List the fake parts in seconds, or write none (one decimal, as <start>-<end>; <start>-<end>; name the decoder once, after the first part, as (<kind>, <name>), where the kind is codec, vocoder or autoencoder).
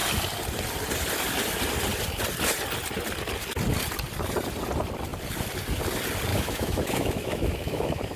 6.3-8.2 (autoencoder, DAC-VAE)